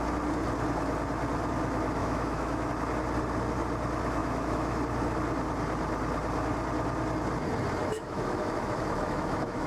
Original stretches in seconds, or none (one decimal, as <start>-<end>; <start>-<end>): 0.0-2.0; 2.7-4.2; 4.8-7.8